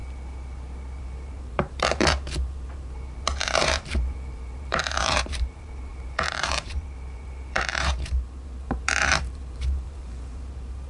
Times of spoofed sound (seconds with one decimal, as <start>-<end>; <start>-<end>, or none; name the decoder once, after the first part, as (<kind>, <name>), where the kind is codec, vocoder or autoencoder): 1.0-10.9 (vocoder, BigVGAN v2)